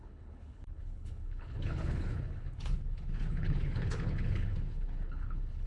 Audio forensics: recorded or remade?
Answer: remade